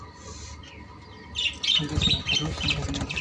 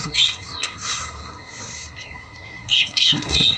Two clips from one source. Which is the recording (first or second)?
first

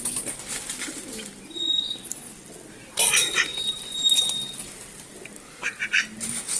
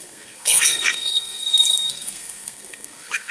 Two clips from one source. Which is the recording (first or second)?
first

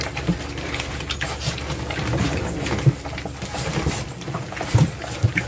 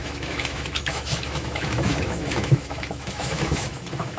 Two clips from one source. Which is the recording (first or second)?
first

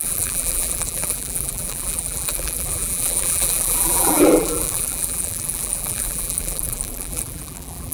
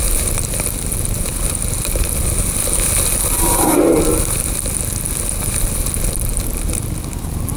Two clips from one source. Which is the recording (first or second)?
second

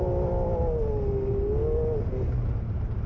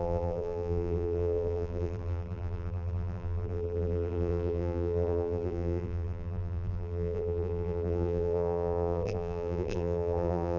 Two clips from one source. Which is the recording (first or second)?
first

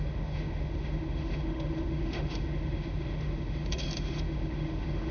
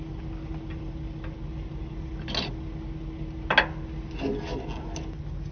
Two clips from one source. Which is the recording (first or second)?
second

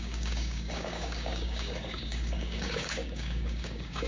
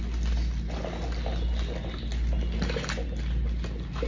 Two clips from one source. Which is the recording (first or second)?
second